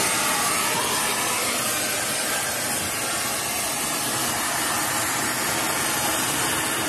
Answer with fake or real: real